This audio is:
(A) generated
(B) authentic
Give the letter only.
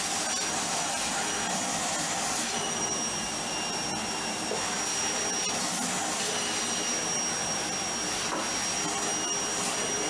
B